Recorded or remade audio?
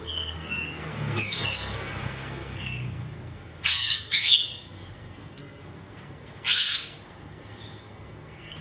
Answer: remade